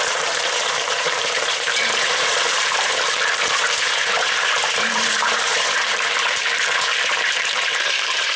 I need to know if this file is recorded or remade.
remade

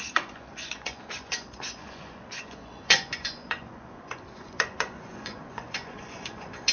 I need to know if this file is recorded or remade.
remade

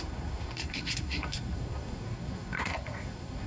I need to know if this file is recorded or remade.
remade